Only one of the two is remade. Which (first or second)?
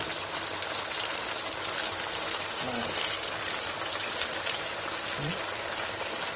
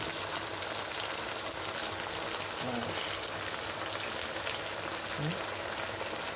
first